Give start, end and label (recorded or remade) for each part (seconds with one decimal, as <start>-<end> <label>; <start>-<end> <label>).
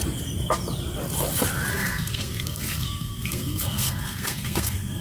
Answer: 0.0-1.7 recorded; 1.7-5.0 remade